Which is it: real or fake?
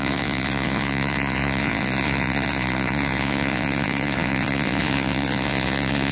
fake